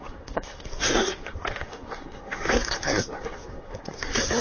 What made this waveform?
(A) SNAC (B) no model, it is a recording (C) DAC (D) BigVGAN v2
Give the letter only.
A